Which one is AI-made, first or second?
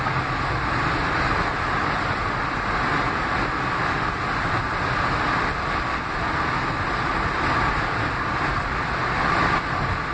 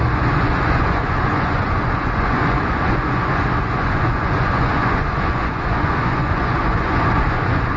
second